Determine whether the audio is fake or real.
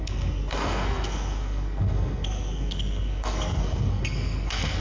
fake